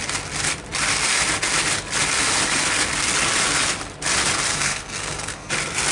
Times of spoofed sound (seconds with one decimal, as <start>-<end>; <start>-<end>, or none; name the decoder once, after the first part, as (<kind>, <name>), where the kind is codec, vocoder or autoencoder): 4.5-5.5 (codec, SNAC)